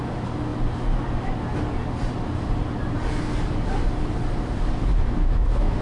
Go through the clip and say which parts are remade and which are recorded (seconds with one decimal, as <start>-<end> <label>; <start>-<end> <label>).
0.0-4.8 recorded; 4.8-5.8 remade